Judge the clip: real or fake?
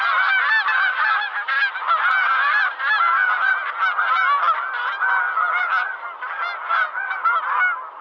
real